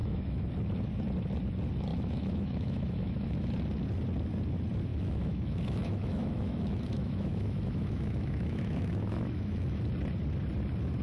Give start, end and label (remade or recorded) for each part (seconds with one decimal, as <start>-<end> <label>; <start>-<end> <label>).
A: 0.0-0.5 remade; 0.5-1.9 recorded; 1.9-3.5 remade; 3.5-4.9 recorded; 4.9-9.8 remade; 9.8-11.0 recorded